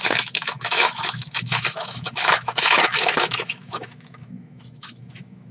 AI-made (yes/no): yes